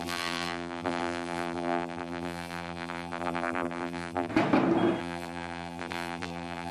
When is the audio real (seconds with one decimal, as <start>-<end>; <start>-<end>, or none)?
4.3-5.0